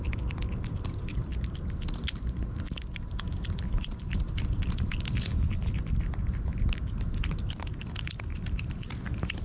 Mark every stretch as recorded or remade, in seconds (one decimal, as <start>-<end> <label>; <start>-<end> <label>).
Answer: 0.0-1.3 remade; 1.3-3.1 recorded; 3.1-6.5 remade; 6.5-7.5 recorded; 7.5-9.4 remade